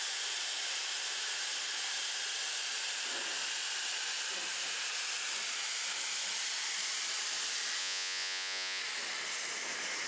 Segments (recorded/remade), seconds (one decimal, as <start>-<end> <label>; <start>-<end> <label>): 0.0-7.8 recorded; 7.8-8.8 remade; 8.8-10.1 recorded